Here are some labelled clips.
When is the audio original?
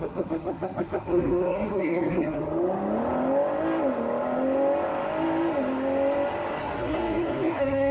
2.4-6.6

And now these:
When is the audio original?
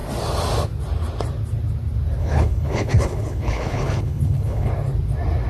0.0-2.2; 4.7-5.5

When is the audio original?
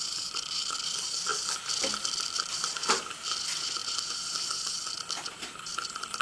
0.0-6.2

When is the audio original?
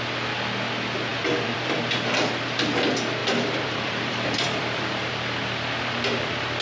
0.0-1.1; 1.8-3.2; 5.1-6.6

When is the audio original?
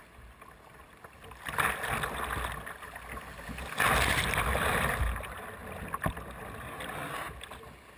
0.0-8.0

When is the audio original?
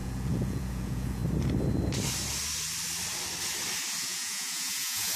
1.2-4.0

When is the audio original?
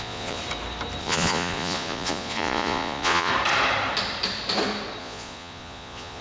0.4-1.0; 3.3-5.0